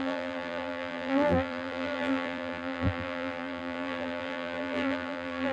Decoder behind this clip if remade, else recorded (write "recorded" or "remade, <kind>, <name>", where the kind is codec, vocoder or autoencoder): remade, vocoder, BigVGAN v2